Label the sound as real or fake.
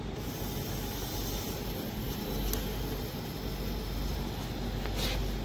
real